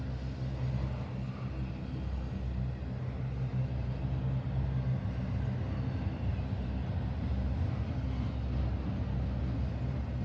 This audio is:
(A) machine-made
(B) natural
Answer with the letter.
B